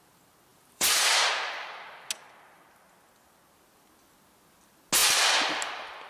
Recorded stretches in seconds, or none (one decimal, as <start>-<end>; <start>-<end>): 0.0-0.5; 1.3-6.1